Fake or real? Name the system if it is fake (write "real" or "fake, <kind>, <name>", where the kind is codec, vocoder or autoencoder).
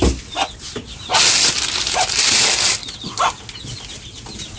real